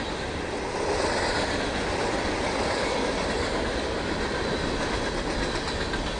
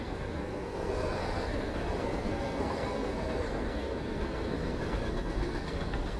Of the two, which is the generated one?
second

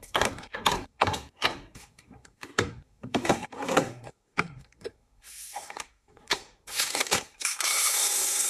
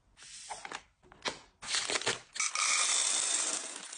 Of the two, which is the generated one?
first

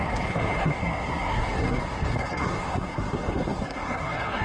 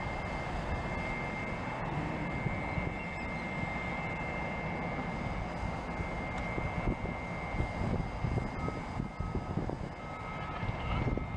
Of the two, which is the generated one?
first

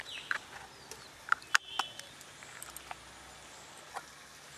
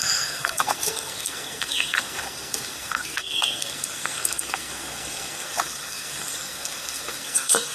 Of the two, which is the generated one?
second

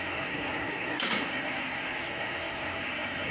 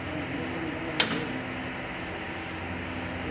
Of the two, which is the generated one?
first